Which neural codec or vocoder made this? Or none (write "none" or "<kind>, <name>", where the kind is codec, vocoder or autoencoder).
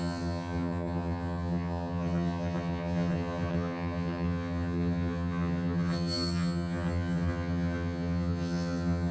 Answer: vocoder, HiFi-GAN